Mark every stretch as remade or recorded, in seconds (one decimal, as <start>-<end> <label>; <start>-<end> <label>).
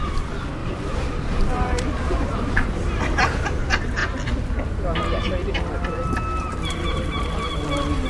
0.0-0.6 recorded; 0.6-3.0 remade; 3.0-8.1 recorded